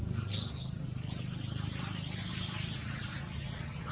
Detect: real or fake real